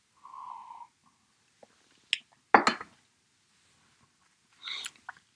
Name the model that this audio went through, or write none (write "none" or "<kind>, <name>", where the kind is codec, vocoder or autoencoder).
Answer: none